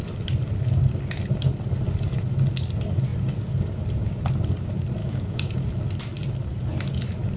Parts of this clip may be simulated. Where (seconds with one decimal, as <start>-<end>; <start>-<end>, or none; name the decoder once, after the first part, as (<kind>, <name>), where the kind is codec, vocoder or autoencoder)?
5.0-5.5 (codec, DAC)